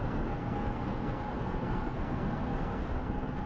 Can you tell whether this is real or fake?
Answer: fake